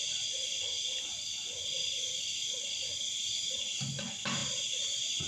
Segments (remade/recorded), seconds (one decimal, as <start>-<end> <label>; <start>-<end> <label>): 0.0-5.3 recorded

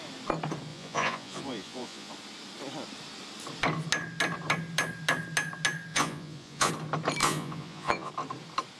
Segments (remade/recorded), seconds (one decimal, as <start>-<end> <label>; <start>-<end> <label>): 0.0-0.7 recorded; 0.7-2.1 remade; 2.1-5.9 recorded; 5.9-6.7 remade; 6.7-7.2 recorded; 7.2-8.1 remade; 8.1-8.8 recorded